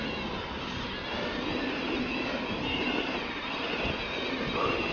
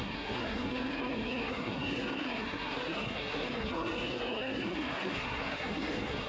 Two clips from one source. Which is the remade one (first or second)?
second